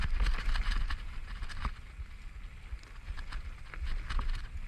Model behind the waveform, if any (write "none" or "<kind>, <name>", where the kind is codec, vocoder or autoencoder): none